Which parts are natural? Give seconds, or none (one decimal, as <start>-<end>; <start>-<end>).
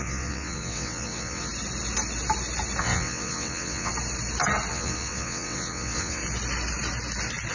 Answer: 1.5-2.8; 3.9-4.7; 6.2-7.5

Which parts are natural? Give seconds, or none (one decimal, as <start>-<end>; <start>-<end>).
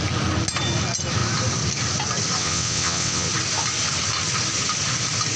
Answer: 0.0-2.4; 3.3-5.4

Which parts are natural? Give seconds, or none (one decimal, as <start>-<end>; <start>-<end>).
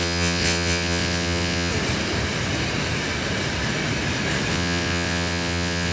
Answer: 1.7-4.5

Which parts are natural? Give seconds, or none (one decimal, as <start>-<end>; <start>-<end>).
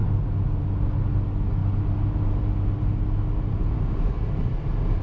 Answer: 0.0-5.0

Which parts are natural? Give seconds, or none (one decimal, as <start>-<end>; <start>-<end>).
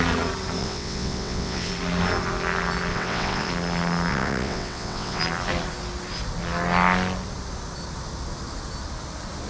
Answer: 0.0-0.6; 1.7-2.9; 3.5-4.1; 5.2-9.5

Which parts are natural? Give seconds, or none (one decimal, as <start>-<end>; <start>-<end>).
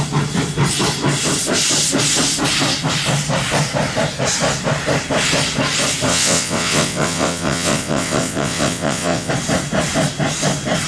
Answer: 0.0-6.1; 9.3-10.9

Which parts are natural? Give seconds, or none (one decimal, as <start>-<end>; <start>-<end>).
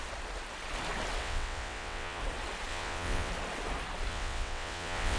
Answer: 0.0-1.2; 2.2-2.7; 3.3-4.1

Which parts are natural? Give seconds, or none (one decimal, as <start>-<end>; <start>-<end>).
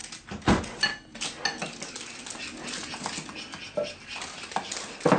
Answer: 0.0-5.2